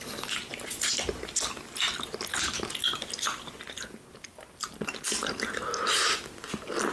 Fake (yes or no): no